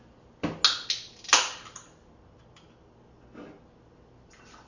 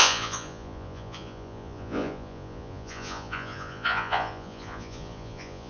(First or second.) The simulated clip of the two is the second